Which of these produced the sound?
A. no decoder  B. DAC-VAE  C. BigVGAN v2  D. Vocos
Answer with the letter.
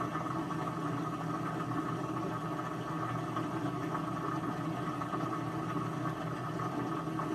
A